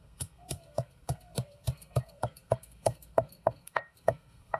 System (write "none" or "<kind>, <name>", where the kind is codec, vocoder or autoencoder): codec, SNAC